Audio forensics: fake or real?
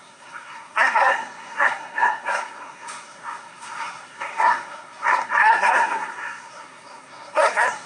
fake